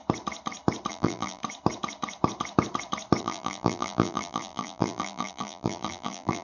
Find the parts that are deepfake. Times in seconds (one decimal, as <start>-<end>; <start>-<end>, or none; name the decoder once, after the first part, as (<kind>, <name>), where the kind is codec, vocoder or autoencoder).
0.9-1.4 (vocoder, BigVGAN v2); 3.2-6.4